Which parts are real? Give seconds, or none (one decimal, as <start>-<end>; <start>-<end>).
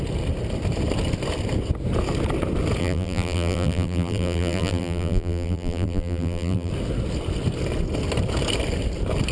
0.0-2.8; 6.7-9.3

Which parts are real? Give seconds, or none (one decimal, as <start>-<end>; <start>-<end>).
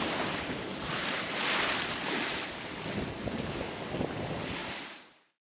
0.0-4.6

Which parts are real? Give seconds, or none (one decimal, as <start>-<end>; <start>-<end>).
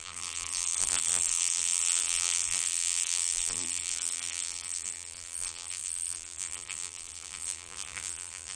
none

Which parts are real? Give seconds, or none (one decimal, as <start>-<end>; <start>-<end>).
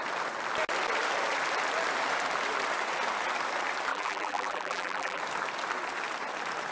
0.0-3.9; 5.2-6.7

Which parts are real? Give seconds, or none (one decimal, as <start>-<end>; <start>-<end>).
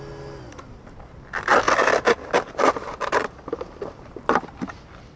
0.0-1.5; 4.6-5.2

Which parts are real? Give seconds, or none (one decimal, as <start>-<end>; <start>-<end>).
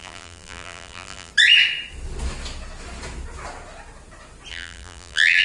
1.3-4.5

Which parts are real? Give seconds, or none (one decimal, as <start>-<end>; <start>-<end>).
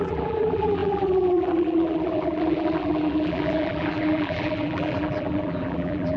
none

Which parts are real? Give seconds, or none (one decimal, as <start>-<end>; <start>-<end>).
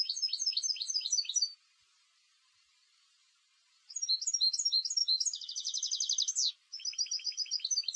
0.0-0.8; 4.0-8.0